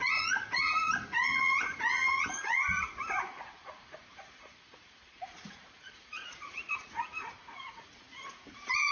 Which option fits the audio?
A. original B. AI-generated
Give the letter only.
B